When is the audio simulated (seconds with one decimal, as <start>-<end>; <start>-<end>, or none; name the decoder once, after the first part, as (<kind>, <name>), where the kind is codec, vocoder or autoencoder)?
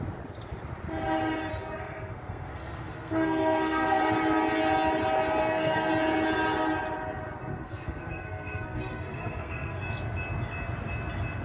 1.5-4.0 (codec, SNAC); 5.4-5.9; 7.6-9.8